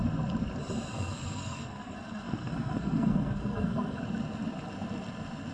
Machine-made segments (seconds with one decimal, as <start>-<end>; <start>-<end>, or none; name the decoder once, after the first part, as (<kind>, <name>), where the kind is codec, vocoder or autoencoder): 0.9-4.0 (codec, SNAC)